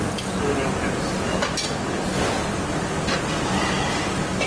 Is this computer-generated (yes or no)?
no